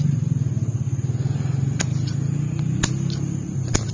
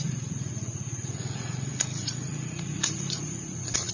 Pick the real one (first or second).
first